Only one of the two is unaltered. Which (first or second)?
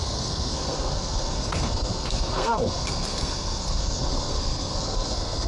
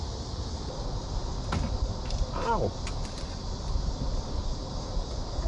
second